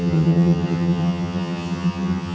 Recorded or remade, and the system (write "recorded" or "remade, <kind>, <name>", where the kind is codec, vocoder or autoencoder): remade, vocoder, HiFi-GAN